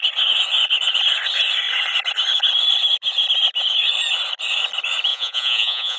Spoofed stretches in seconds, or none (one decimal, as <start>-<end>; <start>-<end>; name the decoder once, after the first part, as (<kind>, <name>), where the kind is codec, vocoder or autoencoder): 5.1-6.0 (vocoder, Vocos)